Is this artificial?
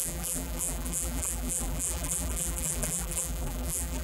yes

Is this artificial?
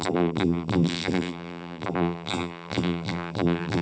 yes